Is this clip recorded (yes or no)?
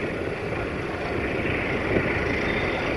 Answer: yes